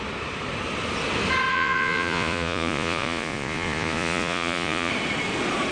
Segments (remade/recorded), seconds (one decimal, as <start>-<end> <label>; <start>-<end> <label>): 0.0-1.5 recorded; 1.5-4.9 remade; 4.9-5.7 recorded